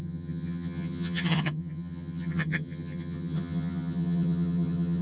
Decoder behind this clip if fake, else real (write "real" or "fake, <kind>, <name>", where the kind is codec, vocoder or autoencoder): fake, vocoder, HiFi-GAN